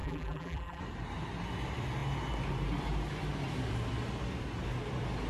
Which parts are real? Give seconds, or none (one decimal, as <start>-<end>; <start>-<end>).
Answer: 0.8-5.3